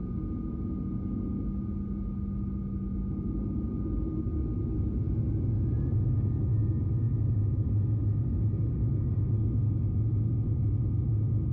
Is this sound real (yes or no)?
yes